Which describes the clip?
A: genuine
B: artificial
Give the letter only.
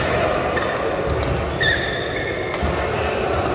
A